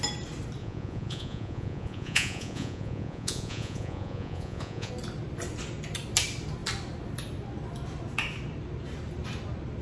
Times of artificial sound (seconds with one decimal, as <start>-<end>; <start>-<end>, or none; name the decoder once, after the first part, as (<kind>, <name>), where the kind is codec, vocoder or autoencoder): 0.6-4.9 (vocoder, Vocos)